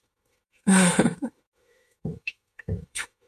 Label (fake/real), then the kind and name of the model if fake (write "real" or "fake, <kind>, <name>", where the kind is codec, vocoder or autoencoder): fake, autoencoder, DAC-VAE